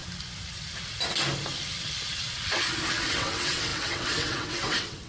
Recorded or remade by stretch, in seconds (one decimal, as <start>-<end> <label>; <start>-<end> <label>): 0.0-3.1 recorded; 3.1-5.1 remade